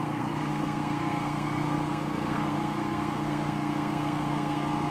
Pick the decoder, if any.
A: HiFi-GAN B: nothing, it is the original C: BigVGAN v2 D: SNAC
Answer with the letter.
D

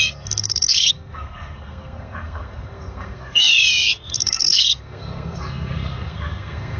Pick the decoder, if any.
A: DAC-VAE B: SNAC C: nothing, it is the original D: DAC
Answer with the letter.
B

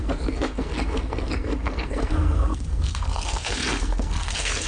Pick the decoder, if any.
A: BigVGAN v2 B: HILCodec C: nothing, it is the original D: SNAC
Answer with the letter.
D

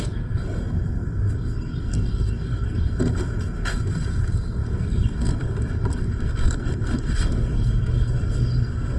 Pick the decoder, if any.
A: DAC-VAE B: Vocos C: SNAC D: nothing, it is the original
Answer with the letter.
C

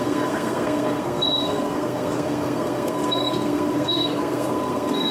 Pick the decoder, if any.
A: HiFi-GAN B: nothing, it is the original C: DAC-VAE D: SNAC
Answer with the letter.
D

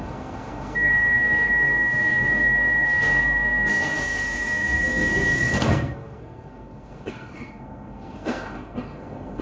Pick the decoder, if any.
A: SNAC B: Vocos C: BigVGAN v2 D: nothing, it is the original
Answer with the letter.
A